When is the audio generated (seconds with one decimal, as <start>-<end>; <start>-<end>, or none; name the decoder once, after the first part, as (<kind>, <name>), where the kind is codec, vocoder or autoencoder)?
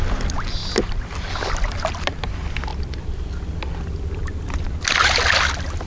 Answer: none